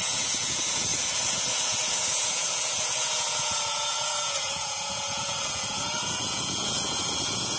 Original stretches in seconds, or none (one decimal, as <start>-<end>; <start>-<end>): none